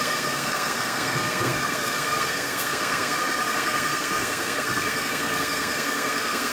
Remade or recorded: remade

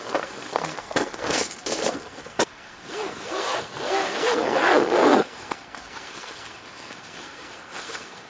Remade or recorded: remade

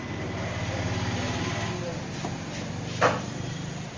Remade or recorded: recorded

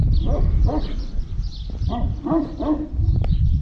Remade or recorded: recorded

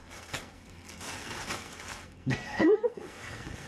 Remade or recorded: remade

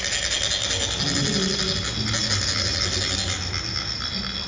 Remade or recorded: recorded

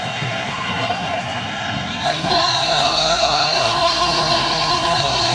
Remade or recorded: remade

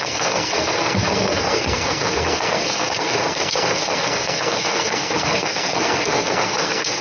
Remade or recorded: remade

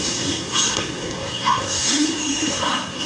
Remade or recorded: remade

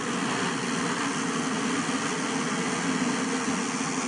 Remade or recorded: recorded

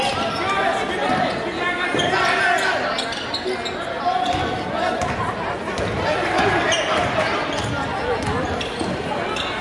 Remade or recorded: recorded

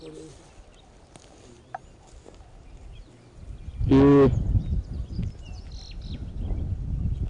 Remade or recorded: recorded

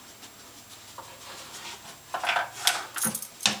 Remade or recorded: recorded